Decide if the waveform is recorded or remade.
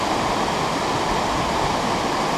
recorded